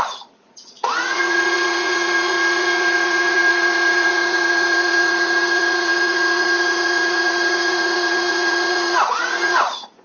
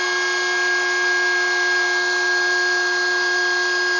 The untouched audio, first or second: second